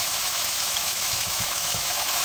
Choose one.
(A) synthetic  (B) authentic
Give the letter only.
A